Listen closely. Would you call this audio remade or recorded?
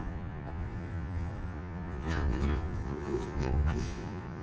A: remade